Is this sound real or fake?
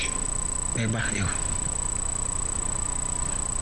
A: real